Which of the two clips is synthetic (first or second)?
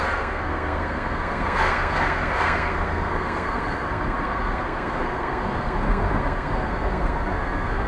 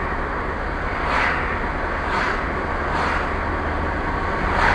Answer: first